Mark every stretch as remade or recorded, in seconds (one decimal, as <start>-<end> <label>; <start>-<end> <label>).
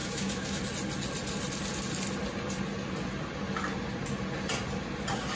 0.0-0.6 remade; 0.6-5.4 recorded